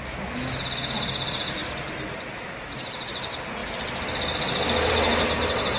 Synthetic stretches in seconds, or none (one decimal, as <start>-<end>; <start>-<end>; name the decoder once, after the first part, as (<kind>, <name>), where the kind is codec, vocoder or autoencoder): none